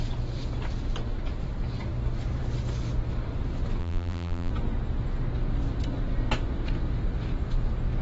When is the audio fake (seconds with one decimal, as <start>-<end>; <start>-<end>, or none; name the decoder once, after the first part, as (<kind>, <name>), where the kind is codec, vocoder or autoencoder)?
3.8-4.5 (vocoder, BigVGAN v2)